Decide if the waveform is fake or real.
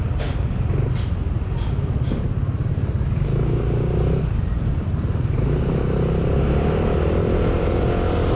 real